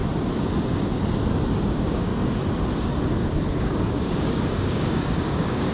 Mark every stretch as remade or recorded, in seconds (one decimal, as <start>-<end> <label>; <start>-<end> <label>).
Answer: 0.0-1.6 recorded; 1.6-2.1 remade; 2.1-3.6 recorded; 3.6-5.7 remade